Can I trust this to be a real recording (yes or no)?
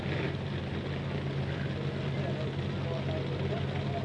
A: yes